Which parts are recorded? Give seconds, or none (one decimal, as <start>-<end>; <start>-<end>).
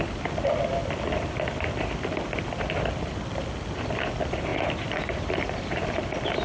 0.0-4.5; 5.9-6.4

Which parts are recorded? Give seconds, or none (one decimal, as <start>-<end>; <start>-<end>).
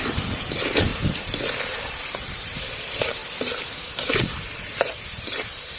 0.9-1.6; 3.2-4.2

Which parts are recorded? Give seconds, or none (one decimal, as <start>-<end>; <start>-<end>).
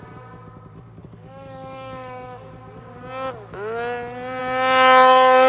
0.0-1.0; 2.5-5.5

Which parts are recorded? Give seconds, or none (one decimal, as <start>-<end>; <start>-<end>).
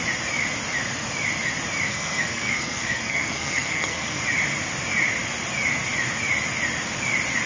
0.0-1.9; 4.2-7.5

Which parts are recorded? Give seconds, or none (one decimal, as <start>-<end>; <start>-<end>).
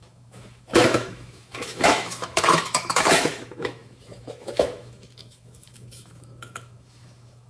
none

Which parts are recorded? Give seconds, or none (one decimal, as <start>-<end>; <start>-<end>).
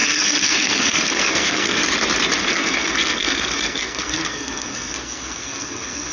1.8-2.4